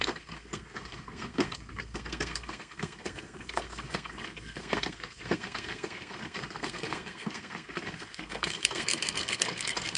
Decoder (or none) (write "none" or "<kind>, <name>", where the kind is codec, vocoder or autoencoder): codec, SNAC